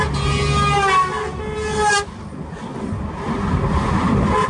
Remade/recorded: recorded